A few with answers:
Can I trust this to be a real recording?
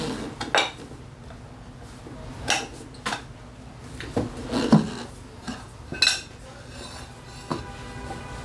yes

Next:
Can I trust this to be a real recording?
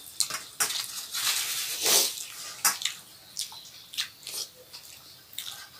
yes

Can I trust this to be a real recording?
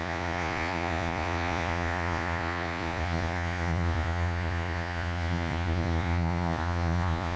no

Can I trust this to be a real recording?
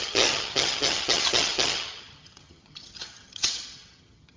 no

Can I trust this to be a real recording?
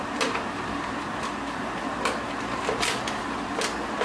yes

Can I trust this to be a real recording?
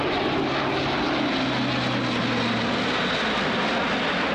yes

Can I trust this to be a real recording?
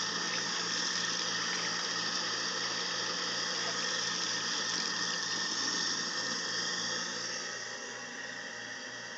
yes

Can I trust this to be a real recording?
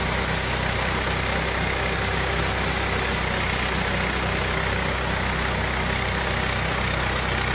yes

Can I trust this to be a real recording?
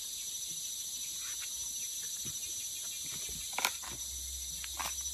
yes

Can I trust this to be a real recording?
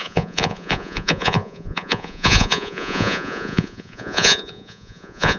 no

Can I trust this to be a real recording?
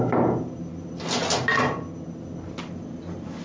yes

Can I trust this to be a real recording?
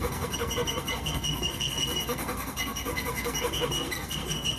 no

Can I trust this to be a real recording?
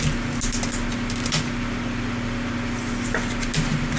yes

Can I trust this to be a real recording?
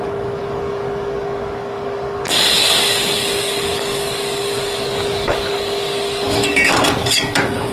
no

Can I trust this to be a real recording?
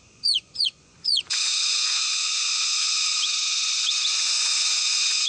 no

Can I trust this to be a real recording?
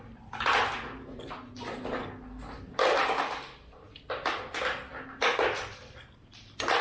yes